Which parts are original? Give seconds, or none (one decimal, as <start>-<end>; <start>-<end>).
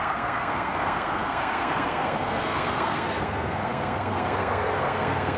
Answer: none